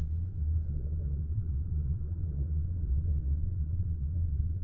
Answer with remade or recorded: remade